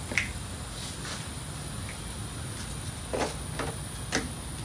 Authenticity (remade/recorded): recorded